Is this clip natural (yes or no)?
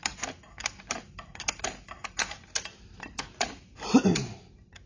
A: no